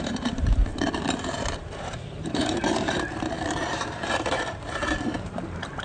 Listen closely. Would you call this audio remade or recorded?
remade